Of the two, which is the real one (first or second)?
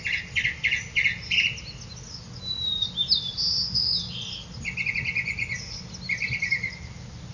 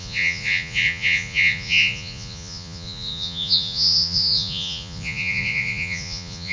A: first